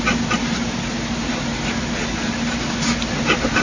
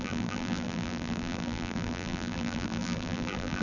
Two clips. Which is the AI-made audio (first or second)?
second